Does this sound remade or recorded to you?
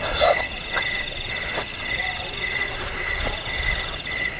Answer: remade